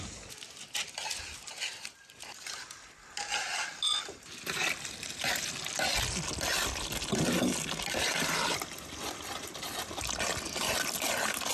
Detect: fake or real real